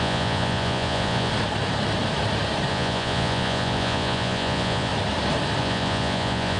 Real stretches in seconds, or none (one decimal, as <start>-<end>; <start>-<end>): 1.3-2.7; 4.9-5.6